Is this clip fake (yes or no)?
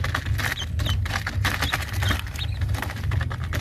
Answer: no